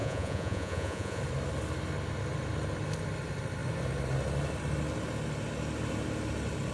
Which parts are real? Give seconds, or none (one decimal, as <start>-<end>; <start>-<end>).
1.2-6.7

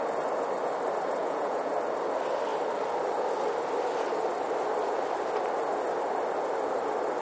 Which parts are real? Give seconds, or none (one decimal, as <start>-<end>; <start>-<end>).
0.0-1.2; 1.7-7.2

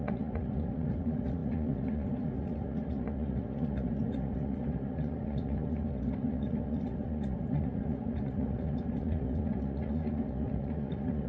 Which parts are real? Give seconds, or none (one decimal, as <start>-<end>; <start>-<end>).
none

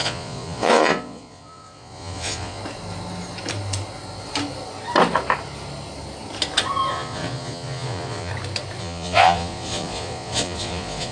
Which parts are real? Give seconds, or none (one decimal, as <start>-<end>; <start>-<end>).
2.6-6.9; 8.3-8.8

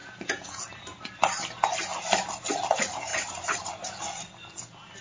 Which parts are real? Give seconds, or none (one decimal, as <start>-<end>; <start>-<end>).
0.7-5.0

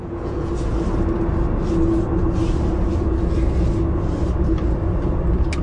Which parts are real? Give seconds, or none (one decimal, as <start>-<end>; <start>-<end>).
0.5-5.6